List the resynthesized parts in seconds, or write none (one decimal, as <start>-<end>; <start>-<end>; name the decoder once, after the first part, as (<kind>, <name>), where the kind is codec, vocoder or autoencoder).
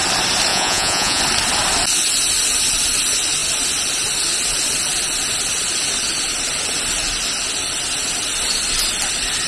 0.5-1.2 (vocoder, Vocos)